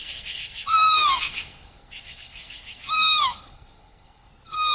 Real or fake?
fake